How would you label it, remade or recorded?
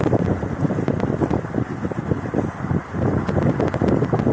recorded